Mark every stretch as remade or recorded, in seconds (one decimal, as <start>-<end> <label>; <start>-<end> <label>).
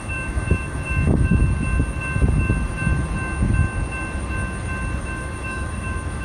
0.0-1.4 remade; 1.4-5.0 recorded; 5.0-6.2 remade